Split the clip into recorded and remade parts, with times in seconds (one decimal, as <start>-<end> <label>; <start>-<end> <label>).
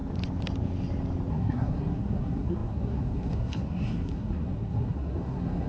0.0-1.3 recorded; 1.3-5.7 remade